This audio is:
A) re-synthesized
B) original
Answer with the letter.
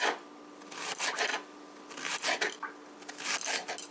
B